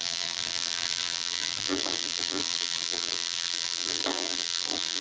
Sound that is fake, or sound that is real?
fake